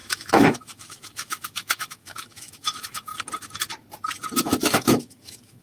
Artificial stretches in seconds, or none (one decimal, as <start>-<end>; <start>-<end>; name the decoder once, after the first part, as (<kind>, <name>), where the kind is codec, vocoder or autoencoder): 0.0-3.1 (autoencoder, DAC-VAE); 4.4-5.6